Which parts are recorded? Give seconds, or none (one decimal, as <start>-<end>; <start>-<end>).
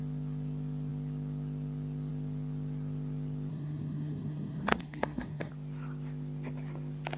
0.0-3.5; 5.5-7.2